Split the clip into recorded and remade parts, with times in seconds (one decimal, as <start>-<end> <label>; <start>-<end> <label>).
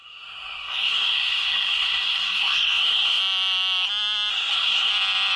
0.0-3.2 remade; 3.2-4.3 recorded; 4.3-4.9 remade; 4.9-5.4 recorded